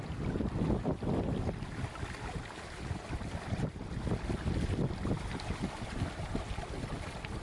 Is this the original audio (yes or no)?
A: yes